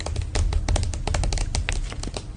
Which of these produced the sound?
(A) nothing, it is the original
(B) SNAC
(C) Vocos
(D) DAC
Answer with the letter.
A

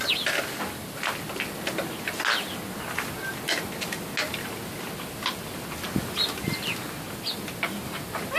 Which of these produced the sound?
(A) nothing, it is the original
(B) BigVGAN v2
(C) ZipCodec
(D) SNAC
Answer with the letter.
A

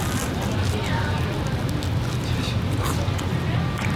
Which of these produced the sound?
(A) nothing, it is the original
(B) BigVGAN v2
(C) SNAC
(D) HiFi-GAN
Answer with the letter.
A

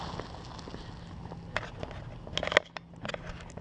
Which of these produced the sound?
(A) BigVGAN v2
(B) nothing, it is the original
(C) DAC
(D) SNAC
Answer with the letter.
B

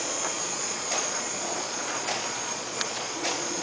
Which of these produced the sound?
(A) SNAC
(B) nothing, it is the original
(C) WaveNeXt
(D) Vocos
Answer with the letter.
D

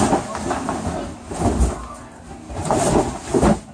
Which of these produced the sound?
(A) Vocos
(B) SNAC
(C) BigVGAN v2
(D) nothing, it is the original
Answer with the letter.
D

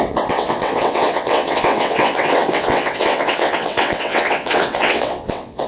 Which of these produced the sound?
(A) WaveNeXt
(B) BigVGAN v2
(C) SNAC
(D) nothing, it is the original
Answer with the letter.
A